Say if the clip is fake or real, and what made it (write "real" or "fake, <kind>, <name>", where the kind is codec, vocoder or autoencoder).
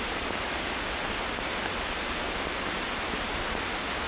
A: real